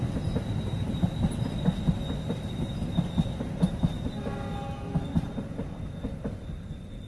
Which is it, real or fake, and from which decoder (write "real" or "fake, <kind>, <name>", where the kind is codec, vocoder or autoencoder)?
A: real